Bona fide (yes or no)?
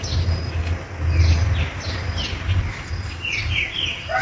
yes